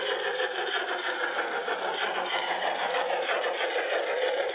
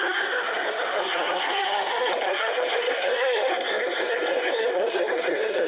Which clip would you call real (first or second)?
first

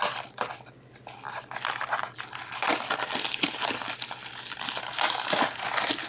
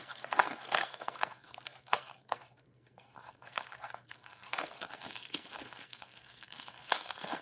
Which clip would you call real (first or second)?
first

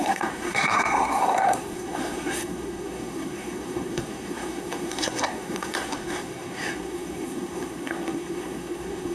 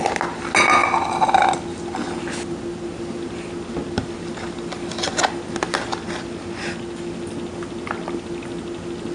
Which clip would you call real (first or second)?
second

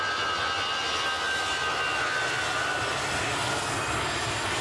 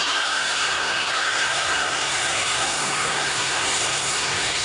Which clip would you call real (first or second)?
first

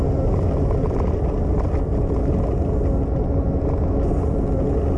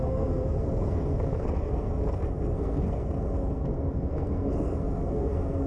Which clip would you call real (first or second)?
first